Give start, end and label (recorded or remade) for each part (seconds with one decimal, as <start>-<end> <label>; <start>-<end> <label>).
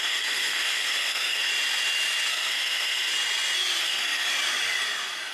0.0-1.5 remade; 1.5-2.3 recorded; 2.3-3.1 remade; 3.1-3.8 recorded; 3.8-4.3 remade; 4.3-5.3 recorded